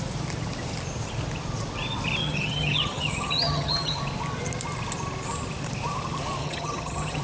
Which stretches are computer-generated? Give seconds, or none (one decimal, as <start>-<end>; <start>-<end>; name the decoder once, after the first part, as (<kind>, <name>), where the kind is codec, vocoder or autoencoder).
2.2-4.0 (vocoder, HiFi-GAN); 6.4-7.2